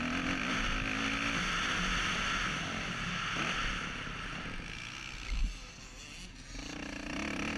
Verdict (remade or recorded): recorded